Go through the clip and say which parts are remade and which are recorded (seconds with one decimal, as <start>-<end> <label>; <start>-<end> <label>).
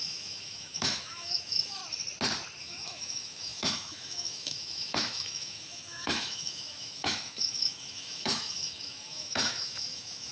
0.0-1.8 remade; 1.8-2.6 recorded; 2.6-10.3 remade